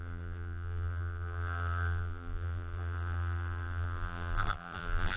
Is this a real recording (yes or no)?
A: no